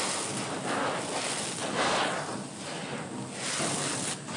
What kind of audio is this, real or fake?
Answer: real